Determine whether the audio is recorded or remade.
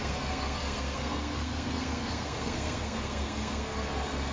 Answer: remade